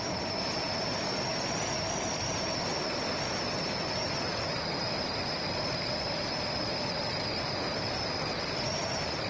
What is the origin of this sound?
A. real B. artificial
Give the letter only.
A